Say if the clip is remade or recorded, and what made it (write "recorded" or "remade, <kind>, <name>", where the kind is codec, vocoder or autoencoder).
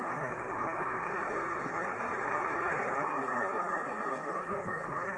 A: remade, codec, SNAC